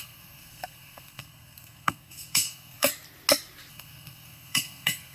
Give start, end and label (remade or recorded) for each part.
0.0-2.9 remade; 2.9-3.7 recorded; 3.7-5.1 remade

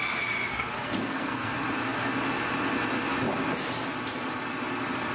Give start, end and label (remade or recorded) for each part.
0.0-0.5 recorded; 0.5-1.5 remade; 1.5-5.1 recorded